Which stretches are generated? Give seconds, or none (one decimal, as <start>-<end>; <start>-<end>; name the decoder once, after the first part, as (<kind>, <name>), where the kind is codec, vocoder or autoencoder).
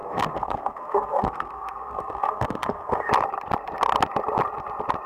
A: 0.0-3.1 (codec, SNAC)